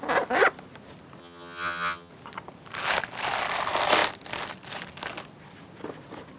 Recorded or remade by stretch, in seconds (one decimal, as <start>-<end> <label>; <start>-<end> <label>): 0.0-1.2 recorded; 1.2-2.1 remade; 2.1-6.4 recorded